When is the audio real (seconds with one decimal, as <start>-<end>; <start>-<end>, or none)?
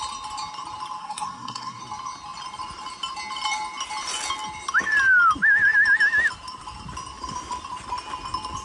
0.0-1.0; 1.8-8.6